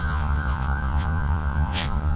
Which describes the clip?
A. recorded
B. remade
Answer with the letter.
B